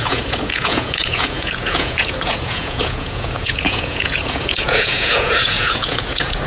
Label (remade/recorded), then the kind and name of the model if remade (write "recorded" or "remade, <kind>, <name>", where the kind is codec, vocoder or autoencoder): remade, vocoder, Vocos